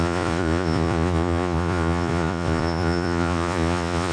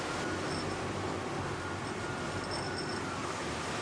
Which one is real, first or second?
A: second